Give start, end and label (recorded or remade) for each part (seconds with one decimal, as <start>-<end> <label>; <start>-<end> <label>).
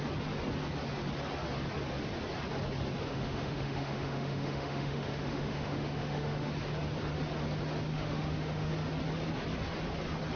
0.0-3.1 recorded; 3.1-6.5 remade; 6.5-7.9 recorded; 7.9-8.7 remade; 8.7-10.4 recorded